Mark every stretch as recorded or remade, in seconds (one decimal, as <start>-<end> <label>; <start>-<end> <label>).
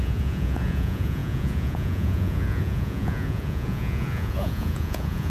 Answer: 0.0-5.3 remade